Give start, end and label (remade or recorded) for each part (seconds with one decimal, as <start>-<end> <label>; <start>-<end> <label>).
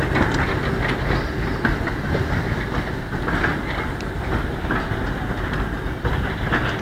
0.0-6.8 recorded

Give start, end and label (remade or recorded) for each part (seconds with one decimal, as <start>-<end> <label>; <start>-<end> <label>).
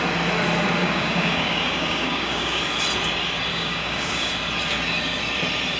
0.0-0.8 recorded; 0.8-2.6 remade; 2.6-3.5 recorded; 3.5-4.3 remade; 4.3-5.8 recorded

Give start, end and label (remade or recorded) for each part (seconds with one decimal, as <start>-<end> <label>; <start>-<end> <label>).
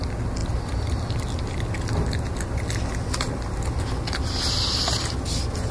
0.0-5.7 recorded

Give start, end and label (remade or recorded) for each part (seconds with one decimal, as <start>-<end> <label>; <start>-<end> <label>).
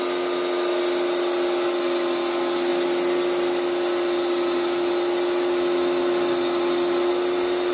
0.0-7.7 recorded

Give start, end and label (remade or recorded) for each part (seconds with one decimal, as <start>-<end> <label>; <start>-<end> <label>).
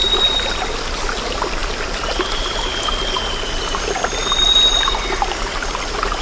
0.0-6.2 recorded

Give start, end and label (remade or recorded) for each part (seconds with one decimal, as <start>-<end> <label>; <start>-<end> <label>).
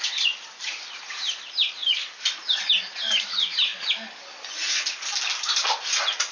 0.0-1.8 remade; 1.8-3.1 recorded; 3.1-3.7 remade; 3.7-5.4 recorded; 5.4-6.3 remade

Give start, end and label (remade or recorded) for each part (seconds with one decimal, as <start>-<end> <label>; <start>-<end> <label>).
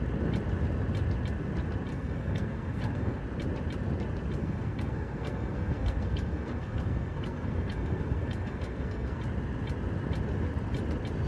0.0-1.9 recorded; 1.9-3.2 remade; 3.2-4.4 recorded; 4.4-9.2 remade; 9.2-11.3 recorded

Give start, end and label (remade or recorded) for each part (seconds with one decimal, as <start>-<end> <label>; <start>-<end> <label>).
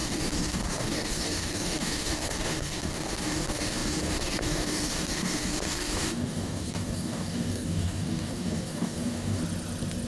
0.0-9.4 remade; 9.4-10.1 recorded